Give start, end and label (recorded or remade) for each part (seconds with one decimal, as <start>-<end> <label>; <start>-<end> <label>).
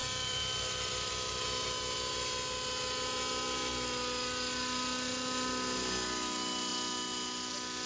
0.0-1.1 remade; 1.1-7.9 recorded